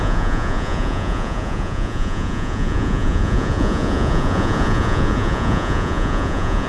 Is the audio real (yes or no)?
no